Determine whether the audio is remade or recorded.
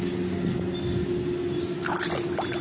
recorded